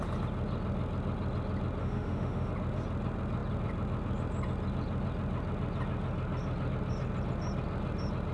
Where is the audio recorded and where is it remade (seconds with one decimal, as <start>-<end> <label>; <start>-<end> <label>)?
0.0-1.8 recorded; 1.8-2.5 remade; 2.5-8.3 recorded